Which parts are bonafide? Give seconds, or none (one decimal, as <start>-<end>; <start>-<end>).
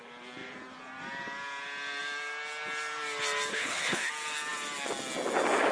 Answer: 0.0-3.5; 4.1-5.7